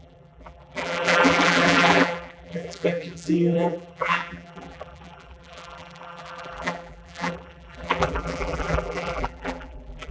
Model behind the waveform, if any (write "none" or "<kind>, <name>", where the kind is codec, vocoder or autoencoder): vocoder, BigVGAN v2